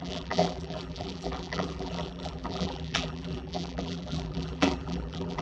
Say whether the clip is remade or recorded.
remade